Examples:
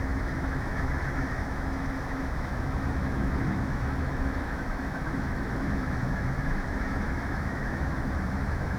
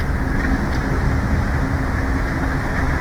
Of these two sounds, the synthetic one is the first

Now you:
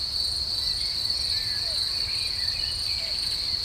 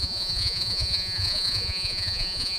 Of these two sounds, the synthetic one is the second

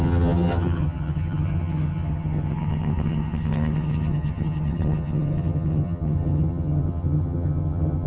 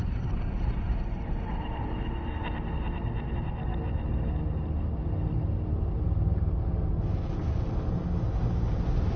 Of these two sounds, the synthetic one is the first